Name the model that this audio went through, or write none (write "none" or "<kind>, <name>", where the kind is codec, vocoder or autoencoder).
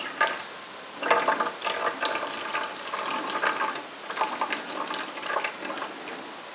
none